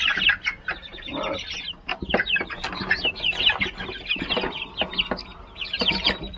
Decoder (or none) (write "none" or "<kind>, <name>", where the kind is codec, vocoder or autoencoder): none